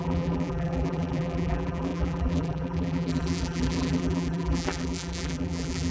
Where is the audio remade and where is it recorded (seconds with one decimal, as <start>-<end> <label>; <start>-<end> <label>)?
0.0-5.9 remade